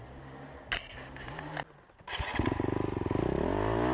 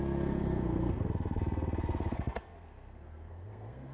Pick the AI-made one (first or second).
second